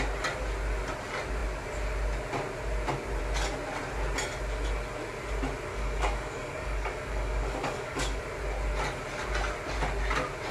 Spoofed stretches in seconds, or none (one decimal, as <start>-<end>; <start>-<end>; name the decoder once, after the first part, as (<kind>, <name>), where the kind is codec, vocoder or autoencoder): 5.7-8.2 (codec, DAC)